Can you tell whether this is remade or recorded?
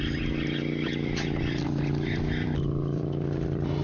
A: remade